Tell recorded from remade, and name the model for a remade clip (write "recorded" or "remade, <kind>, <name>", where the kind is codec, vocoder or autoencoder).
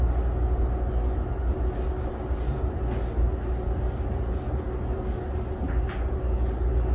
recorded